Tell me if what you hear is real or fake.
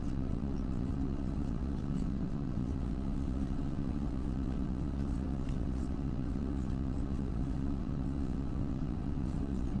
fake